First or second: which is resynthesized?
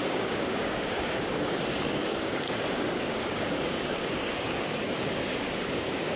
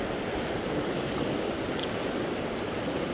first